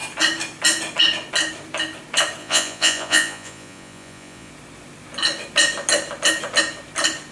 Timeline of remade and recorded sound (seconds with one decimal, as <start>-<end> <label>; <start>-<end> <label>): 0.0-2.4 recorded; 2.4-4.5 remade; 4.5-7.3 recorded